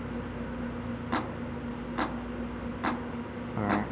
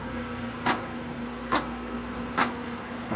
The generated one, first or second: second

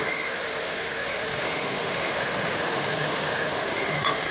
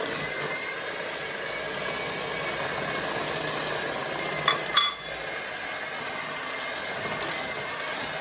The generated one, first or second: first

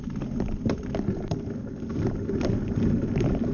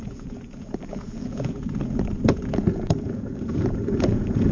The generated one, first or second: second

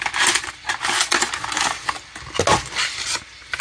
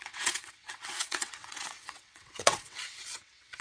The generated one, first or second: second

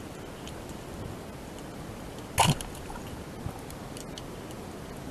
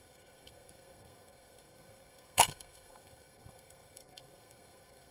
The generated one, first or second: second